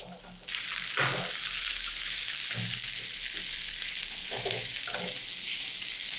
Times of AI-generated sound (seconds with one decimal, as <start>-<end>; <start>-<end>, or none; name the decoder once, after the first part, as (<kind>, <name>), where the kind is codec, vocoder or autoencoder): 1.6-2.3 (autoencoder, DAC-VAE); 4.2-4.8